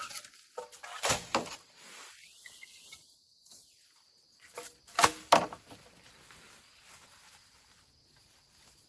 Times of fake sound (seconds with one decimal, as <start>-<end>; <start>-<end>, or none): none